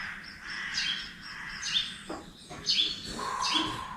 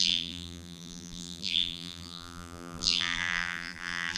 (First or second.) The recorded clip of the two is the first